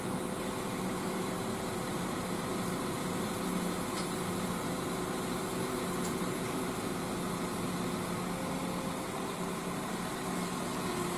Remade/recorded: recorded